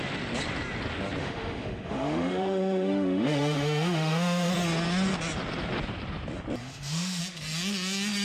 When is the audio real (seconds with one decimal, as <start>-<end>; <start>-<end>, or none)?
0.0-1.2; 4.5-6.6; 7.2-8.2